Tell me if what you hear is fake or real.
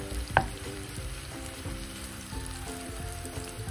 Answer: fake